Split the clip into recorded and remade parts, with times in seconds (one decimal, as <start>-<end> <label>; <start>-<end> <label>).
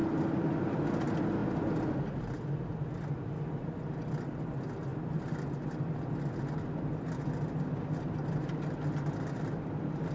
0.0-10.1 recorded